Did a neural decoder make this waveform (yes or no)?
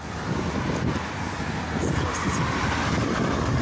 no